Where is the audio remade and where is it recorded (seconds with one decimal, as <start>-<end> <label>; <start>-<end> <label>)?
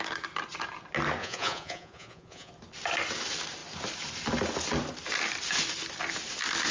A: 0.0-1.2 recorded; 1.2-2.5 remade; 2.5-6.7 recorded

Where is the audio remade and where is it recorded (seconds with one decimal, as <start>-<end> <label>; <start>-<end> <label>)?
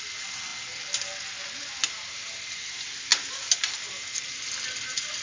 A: 0.0-5.2 recorded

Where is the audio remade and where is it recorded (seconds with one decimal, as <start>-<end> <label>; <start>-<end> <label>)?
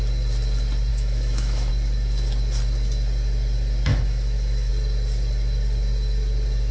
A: 0.0-0.9 recorded; 0.9-1.7 remade; 1.7-3.9 recorded; 3.9-4.7 remade; 4.7-6.7 recorded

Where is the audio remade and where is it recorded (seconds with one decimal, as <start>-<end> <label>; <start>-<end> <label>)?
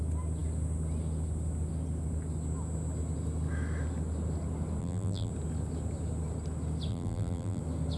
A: 0.0-4.8 recorded; 4.8-5.3 remade; 5.3-6.9 recorded; 6.9-7.6 remade; 7.6-8.0 recorded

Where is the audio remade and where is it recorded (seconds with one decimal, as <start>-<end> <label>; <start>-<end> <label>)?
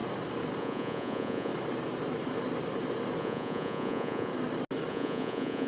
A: 0.0-0.6 recorded; 0.6-1.5 remade; 1.5-3.2 recorded; 3.2-4.3 remade; 4.3-4.9 recorded; 4.9-5.7 remade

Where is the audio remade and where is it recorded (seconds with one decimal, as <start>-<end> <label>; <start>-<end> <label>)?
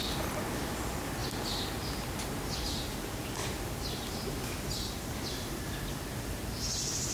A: 0.0-7.1 recorded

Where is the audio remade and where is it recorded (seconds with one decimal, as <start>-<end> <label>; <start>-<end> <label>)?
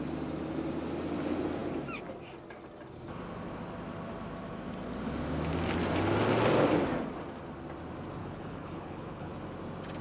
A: 0.0-8.2 recorded; 8.2-9.3 remade; 9.3-10.0 recorded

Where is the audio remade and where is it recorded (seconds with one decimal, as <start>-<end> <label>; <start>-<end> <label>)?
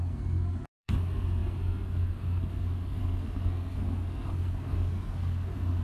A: 0.0-5.8 remade